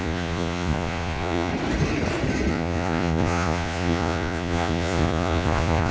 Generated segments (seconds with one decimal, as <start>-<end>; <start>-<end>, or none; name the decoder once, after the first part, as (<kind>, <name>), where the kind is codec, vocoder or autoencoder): 0.0-1.5 (vocoder, Vocos); 2.5-5.9